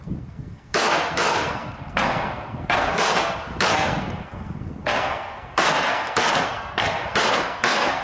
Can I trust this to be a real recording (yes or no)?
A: no